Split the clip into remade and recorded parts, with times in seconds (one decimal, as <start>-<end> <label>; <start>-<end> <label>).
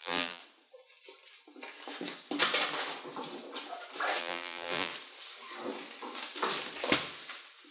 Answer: 0.0-0.4 remade; 0.4-4.2 recorded; 4.2-4.9 remade; 4.9-7.7 recorded